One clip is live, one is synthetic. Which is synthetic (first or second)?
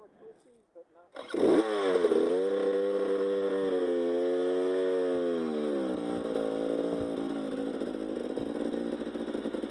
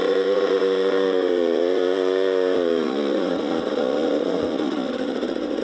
second